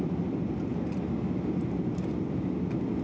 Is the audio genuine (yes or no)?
yes